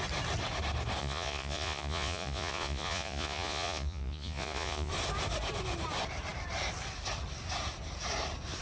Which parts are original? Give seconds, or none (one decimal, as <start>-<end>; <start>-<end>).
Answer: 0.0-1.0; 4.9-8.6

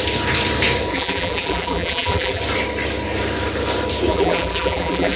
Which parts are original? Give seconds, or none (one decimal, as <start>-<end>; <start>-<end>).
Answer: 0.0-0.9; 2.4-4.1

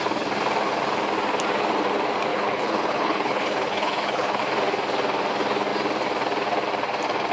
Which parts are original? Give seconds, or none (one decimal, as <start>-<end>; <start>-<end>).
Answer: 0.0-2.3; 4.4-7.3